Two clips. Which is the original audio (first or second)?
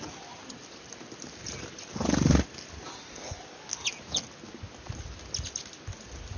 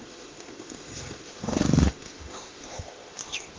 first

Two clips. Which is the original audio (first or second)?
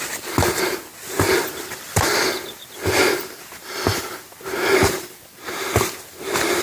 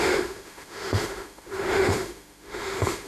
first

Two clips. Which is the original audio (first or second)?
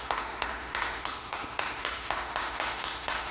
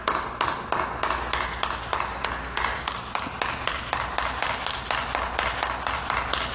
second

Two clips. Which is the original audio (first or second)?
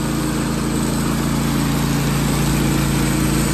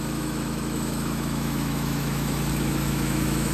first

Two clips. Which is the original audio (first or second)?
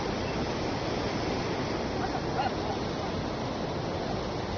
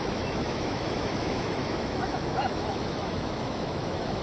first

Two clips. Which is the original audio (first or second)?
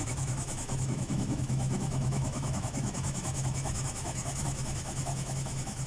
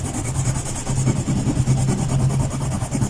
second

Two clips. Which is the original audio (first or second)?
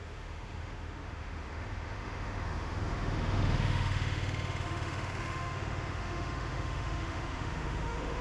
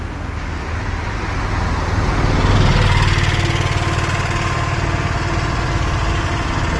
second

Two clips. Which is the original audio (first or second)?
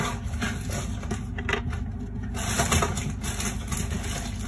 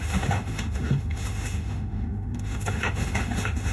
first